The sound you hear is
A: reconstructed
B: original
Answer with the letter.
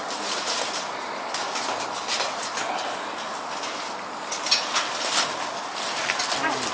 B